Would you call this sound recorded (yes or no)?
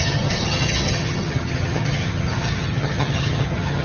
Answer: no